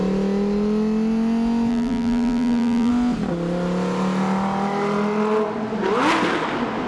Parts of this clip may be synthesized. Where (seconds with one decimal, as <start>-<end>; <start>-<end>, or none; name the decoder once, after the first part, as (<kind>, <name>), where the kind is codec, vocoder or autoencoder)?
1.7-2.9 (vocoder, BigVGAN v2)